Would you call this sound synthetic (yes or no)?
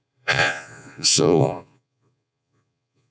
yes